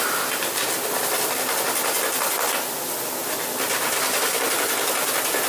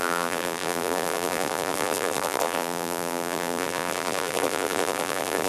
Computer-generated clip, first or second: second